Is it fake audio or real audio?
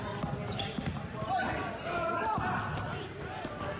real